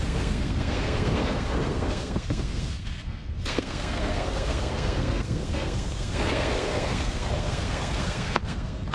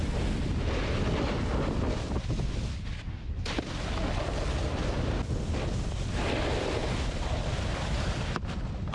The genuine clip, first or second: second